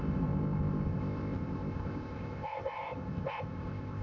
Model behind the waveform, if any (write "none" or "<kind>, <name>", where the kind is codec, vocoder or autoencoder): codec, ZipCodec